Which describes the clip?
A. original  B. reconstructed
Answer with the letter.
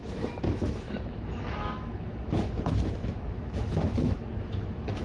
B